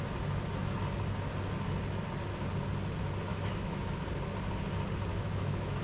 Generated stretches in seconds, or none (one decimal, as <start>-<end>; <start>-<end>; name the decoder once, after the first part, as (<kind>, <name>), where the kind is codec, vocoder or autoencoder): 3.3-3.9 (autoencoder, DAC-VAE); 5.1-5.8